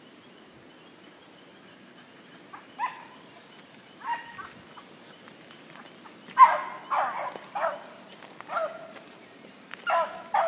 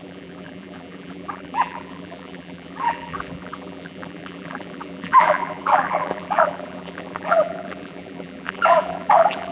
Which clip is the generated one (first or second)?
second